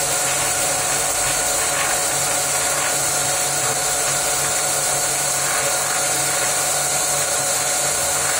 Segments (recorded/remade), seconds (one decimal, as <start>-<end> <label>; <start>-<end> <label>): 0.0-8.4 recorded